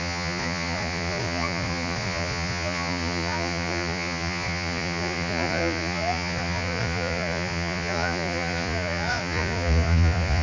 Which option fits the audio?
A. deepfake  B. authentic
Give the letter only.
A